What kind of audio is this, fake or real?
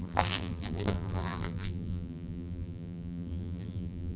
fake